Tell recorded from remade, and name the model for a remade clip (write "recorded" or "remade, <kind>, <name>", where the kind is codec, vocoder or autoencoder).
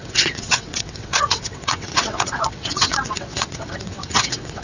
remade, vocoder, WaveNeXt